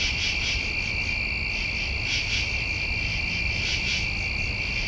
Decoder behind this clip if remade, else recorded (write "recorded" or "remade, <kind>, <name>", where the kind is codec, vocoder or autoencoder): recorded